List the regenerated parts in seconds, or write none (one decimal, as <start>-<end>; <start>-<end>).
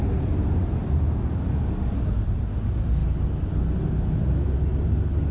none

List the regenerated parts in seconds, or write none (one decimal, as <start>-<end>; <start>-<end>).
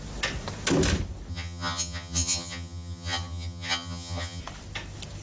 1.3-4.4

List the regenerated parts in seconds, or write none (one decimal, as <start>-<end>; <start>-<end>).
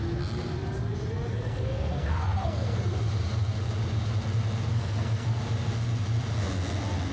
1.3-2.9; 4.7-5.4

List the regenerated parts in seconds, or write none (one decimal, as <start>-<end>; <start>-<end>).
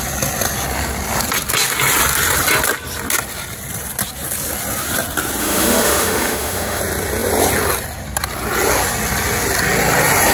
5.4-6.8